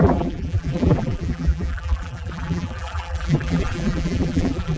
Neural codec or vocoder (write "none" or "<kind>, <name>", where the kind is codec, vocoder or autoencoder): vocoder, BigVGAN v2